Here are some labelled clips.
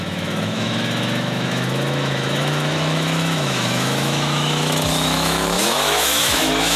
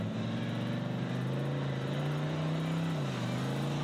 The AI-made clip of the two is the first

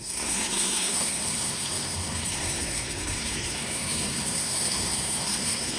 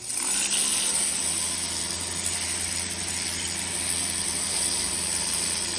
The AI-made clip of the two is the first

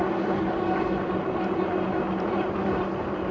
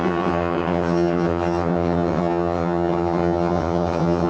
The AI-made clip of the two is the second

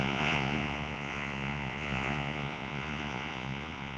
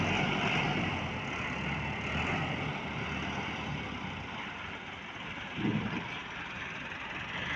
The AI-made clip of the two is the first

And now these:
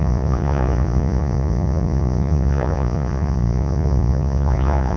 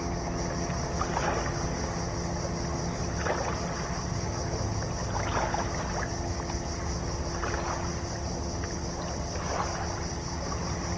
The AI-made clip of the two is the first